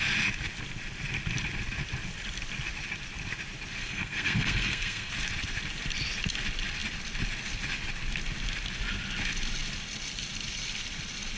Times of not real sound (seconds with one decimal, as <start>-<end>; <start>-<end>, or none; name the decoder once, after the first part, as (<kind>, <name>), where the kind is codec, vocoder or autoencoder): 3.8-5.1 (codec, SNAC)